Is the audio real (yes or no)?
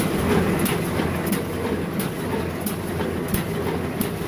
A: yes